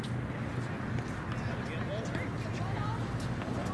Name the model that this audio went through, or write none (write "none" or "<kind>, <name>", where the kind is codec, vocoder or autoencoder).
none